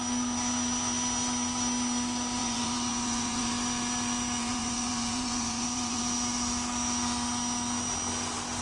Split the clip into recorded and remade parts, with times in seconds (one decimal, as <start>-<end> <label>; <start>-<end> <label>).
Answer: 0.0-2.4 recorded; 2.4-3.5 remade; 3.5-4.4 recorded; 4.4-6.0 remade; 6.0-8.6 recorded